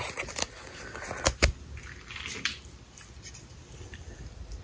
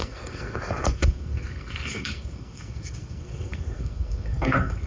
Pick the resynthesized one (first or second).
second